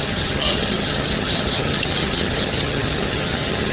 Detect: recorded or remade remade